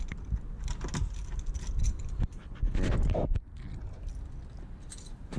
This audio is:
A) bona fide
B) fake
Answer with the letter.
A